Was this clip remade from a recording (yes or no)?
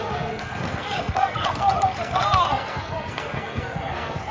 yes